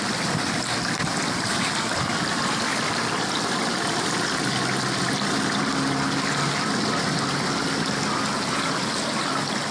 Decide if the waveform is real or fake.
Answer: real